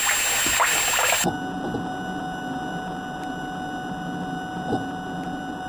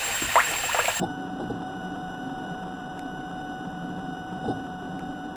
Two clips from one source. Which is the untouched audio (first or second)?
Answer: first